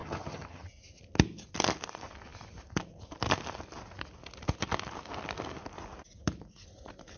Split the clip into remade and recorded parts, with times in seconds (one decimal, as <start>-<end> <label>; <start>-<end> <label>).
0.0-0.7 remade; 0.7-7.2 recorded